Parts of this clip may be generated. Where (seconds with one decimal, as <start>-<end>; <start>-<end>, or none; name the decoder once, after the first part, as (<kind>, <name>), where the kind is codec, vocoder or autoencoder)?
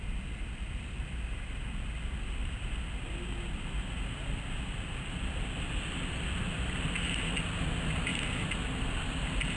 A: none